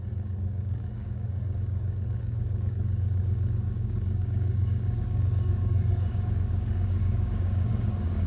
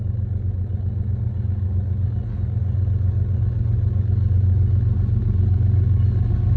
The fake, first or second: first